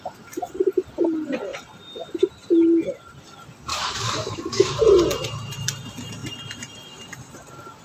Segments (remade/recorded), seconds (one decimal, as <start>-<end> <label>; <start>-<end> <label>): 0.0-3.7 recorded; 3.7-4.8 remade; 4.8-7.8 recorded